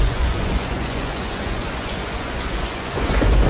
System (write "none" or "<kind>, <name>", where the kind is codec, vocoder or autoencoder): vocoder, Vocos